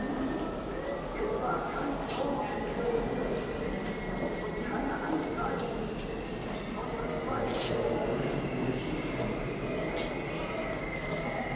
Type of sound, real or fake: real